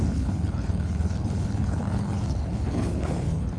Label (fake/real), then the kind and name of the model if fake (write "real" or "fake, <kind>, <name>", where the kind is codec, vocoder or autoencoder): fake, codec, HILCodec